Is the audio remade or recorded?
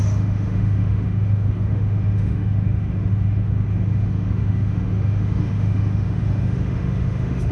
remade